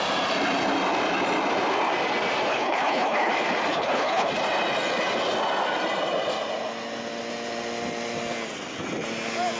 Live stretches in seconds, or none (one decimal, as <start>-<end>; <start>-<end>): 0.0-2.5; 3.3-3.7; 4.3-9.6